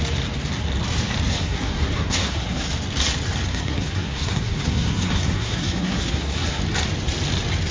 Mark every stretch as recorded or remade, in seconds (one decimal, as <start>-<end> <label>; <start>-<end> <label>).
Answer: 0.0-1.3 recorded; 1.3-2.7 remade; 2.7-3.5 recorded; 3.5-6.6 remade; 6.6-7.7 recorded